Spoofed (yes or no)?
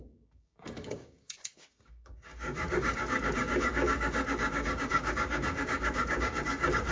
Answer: yes